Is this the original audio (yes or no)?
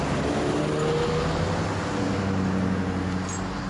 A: yes